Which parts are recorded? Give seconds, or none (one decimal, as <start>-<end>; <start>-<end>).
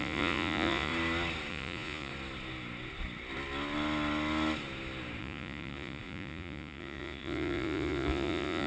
0.9-1.5; 2.1-5.2